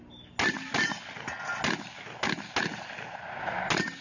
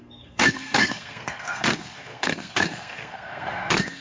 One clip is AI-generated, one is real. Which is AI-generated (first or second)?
second